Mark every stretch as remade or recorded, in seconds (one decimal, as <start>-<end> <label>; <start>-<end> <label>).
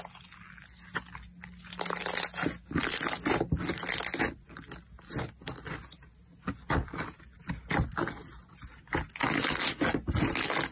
0.0-10.7 recorded